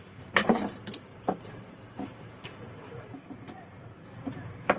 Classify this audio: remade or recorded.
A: remade